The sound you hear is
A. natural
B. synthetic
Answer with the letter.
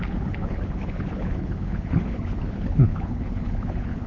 B